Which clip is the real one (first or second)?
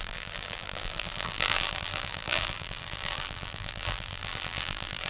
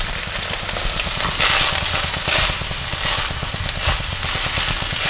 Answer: second